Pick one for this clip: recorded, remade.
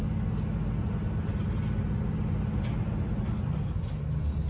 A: recorded